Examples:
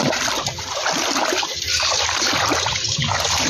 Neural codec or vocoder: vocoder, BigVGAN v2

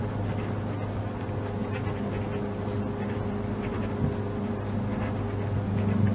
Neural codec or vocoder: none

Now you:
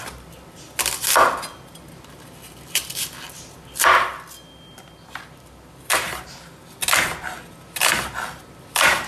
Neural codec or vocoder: none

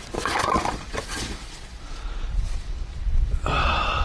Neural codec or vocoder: vocoder, Vocos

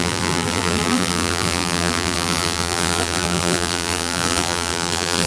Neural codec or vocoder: vocoder, BigVGAN v2